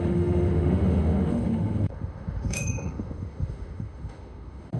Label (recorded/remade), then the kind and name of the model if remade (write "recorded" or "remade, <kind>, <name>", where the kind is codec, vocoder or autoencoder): remade, autoencoder, DAC-VAE